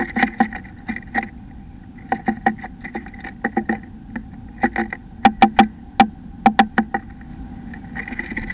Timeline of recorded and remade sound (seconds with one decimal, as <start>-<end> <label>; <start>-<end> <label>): 0.0-8.5 recorded